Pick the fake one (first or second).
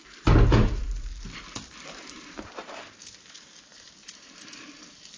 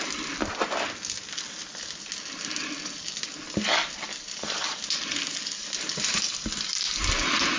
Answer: first